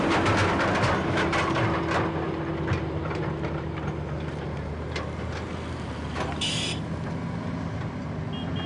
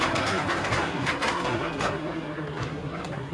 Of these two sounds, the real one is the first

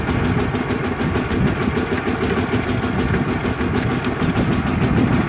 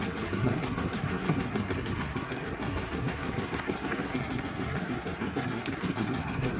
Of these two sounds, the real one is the first